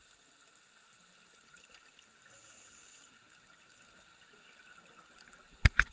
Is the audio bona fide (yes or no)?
yes